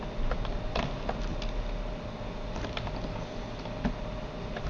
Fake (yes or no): no